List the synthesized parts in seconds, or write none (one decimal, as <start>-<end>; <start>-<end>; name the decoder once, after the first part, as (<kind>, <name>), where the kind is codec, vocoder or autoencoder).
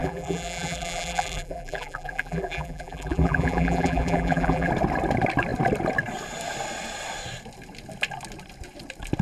0.0-4.7 (vocoder, BigVGAN v2)